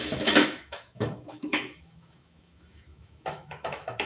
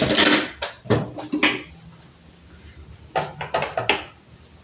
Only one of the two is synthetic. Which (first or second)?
first